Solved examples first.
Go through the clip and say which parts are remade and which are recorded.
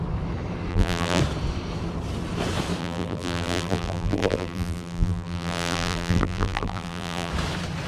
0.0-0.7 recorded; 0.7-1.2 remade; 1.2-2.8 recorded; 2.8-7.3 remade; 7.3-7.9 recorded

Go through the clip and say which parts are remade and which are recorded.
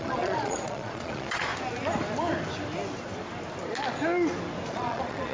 0.0-1.5 remade; 1.5-4.7 recorded; 4.7-5.3 remade